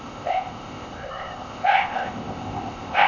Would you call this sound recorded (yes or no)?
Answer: no